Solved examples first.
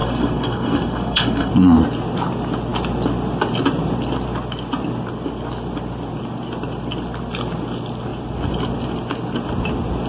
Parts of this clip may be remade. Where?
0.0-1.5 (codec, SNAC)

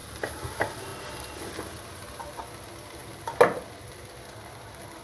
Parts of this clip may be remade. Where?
0.9-2.3 (vocoder, BigVGAN v2)